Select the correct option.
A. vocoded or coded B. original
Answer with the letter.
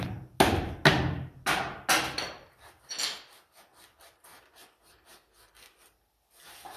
B